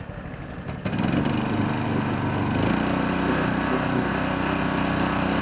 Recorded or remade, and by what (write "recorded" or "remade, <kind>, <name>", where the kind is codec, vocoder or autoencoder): recorded